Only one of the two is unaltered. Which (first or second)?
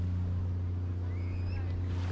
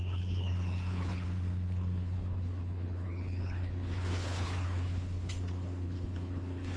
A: first